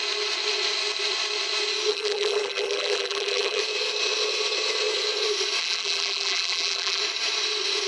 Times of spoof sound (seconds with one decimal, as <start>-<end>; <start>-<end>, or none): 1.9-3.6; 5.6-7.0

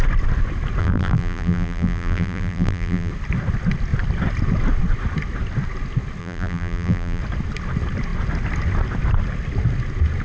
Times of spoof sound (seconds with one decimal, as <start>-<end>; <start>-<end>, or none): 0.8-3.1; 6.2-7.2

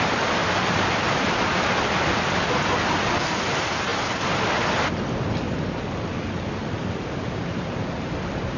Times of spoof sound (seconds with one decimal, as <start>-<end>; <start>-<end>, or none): 0.4-2.5; 3.9-6.6

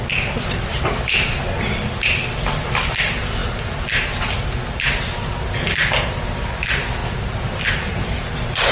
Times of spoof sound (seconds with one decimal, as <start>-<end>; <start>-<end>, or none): 0.7-1.4; 7.0-8.2

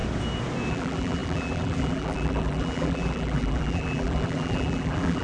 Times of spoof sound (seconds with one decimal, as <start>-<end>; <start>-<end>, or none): 0.7-5.2

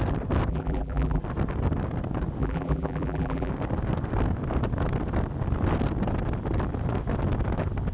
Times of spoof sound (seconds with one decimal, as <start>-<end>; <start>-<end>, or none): 0.5-1.2; 2.4-3.5

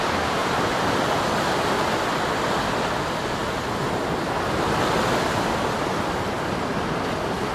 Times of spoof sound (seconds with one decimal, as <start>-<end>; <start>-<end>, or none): 0.4-0.9